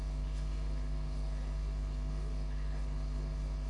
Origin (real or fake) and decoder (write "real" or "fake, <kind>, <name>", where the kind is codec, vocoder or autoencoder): fake, codec, HILCodec